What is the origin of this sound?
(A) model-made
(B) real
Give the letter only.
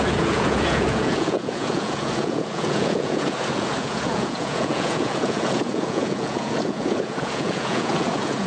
A